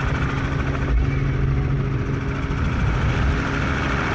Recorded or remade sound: recorded